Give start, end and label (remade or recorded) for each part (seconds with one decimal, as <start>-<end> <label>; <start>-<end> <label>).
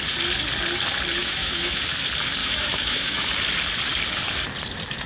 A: 0.0-1.2 recorded; 1.2-1.8 remade; 1.8-2.4 recorded; 2.4-3.3 remade; 3.3-5.1 recorded